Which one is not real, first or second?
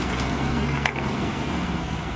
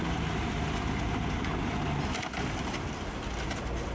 first